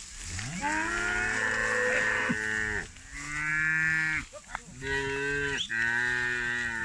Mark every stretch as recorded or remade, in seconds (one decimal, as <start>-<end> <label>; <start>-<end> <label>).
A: 0.0-6.8 recorded